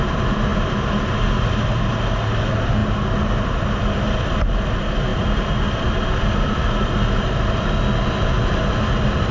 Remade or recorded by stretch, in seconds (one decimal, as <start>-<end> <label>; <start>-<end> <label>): 0.0-9.3 recorded